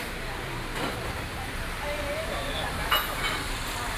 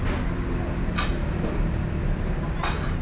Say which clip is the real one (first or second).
first